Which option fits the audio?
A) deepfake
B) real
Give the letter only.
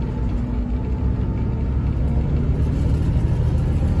B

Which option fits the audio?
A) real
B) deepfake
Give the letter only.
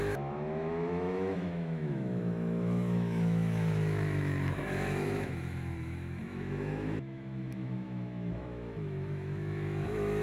B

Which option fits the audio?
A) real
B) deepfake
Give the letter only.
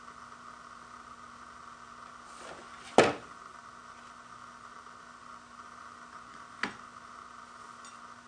A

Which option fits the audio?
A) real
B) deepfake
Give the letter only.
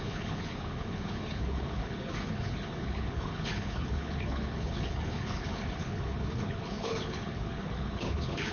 B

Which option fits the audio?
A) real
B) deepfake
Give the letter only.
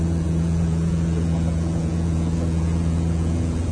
B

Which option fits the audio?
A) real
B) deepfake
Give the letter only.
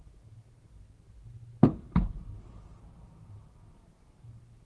A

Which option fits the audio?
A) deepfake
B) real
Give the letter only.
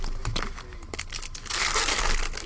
B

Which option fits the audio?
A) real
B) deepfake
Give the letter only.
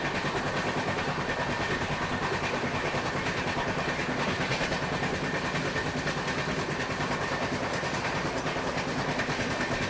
A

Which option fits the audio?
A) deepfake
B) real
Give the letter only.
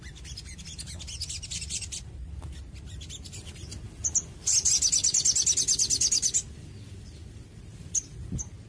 B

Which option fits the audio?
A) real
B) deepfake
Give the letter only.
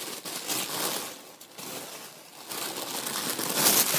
A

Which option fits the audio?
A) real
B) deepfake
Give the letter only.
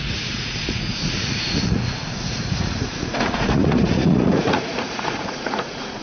B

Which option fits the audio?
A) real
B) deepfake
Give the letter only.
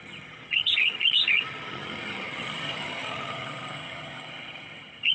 B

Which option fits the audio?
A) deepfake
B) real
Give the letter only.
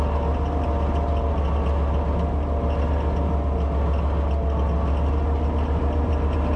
B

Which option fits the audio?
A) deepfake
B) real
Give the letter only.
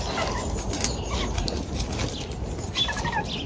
B